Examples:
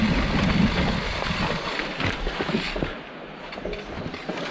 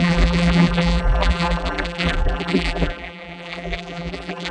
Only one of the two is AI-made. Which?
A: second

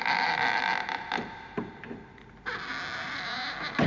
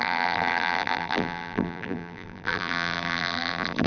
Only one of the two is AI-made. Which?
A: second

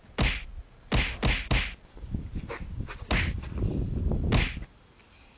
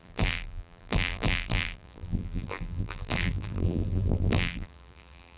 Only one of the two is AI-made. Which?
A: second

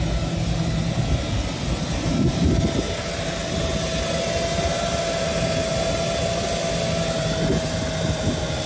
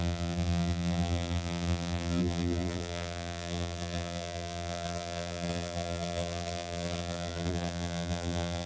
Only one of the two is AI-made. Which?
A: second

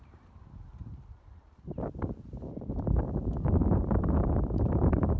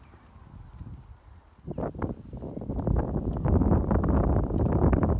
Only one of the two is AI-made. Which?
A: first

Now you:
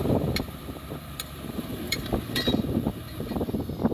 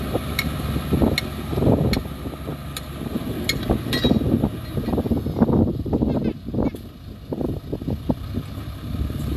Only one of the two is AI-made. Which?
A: first